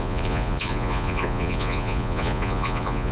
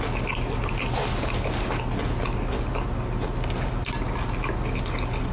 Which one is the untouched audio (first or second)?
second